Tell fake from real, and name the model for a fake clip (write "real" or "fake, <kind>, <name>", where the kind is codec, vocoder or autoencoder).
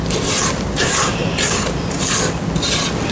real